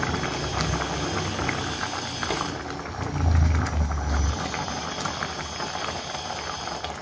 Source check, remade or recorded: recorded